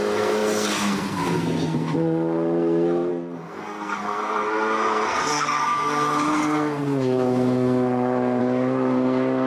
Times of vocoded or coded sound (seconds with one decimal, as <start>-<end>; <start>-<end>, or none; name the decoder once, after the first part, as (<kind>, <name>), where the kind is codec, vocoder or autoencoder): 0.0-9.5 (codec, SNAC)